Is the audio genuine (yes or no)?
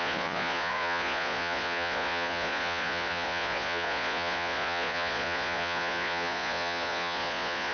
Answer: no